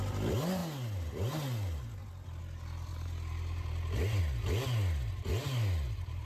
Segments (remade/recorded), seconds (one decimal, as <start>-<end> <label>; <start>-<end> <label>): 0.0-6.2 recorded